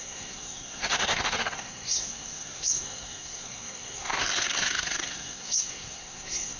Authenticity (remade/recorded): remade